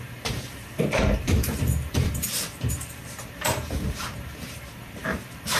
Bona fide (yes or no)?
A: no